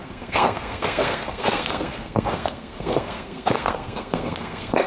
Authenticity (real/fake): fake